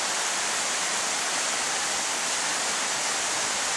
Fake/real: real